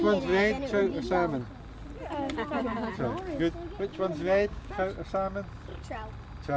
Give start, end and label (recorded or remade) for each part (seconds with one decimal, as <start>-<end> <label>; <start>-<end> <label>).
0.0-3.9 recorded; 3.9-4.7 remade; 4.7-6.6 recorded